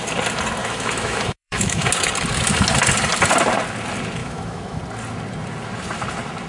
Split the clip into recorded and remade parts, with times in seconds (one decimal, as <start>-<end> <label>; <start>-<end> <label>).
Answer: 0.0-0.6 recorded; 0.6-1.9 remade; 1.9-4.2 recorded; 4.2-4.8 remade; 4.8-6.5 recorded